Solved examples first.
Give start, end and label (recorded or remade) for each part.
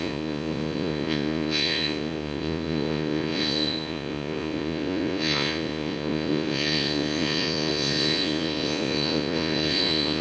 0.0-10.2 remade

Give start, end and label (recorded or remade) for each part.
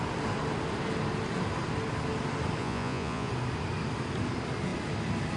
0.0-2.6 recorded; 2.6-3.3 remade; 3.3-5.4 recorded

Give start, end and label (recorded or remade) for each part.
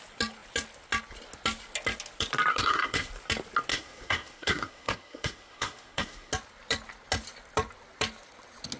0.0-2.5 recorded; 2.5-3.1 remade; 3.1-3.7 recorded; 3.7-6.3 remade; 6.3-8.8 recorded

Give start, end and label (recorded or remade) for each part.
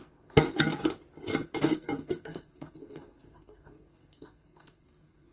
0.0-0.8 remade; 0.8-1.6 recorded; 1.6-5.3 remade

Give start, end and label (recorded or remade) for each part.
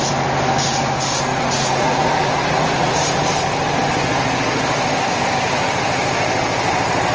0.0-1.3 recorded; 1.3-3.0 remade; 3.0-7.1 recorded